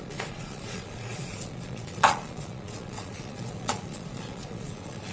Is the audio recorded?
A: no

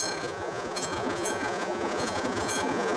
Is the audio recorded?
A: no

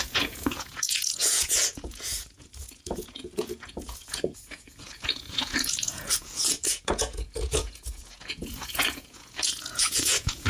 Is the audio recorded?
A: no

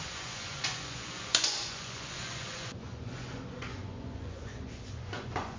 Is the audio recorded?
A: no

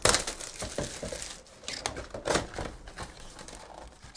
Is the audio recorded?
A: yes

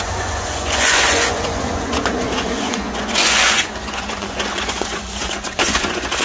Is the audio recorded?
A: no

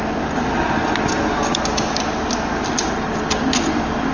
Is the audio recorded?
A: yes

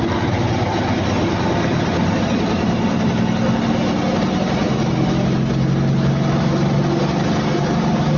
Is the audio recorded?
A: yes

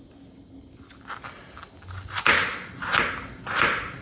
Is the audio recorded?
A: yes